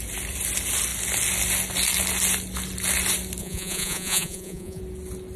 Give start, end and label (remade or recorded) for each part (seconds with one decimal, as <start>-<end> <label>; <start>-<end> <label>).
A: 0.0-3.4 recorded; 3.4-4.8 remade; 4.8-5.4 recorded